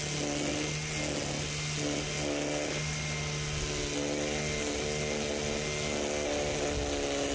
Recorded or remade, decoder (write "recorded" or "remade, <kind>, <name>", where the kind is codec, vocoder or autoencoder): recorded